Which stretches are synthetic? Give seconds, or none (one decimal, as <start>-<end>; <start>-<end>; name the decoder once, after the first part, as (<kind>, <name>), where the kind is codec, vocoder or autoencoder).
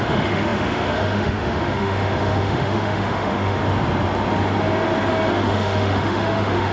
0.0-3.6 (autoencoder, DAC-VAE); 5.3-6.7